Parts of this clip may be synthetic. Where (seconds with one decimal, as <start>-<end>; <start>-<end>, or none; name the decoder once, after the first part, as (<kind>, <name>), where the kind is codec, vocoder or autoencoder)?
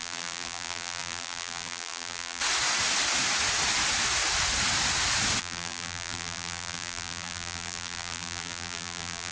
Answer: 0.0-2.4 (vocoder, BigVGAN v2); 5.4-9.3